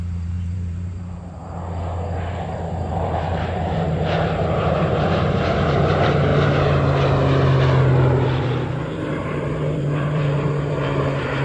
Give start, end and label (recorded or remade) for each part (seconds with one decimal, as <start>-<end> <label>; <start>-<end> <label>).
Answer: 0.0-1.4 remade; 1.4-2.9 recorded; 2.9-6.3 remade; 6.3-8.4 recorded; 8.4-11.4 remade